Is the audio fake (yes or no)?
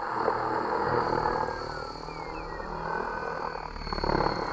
no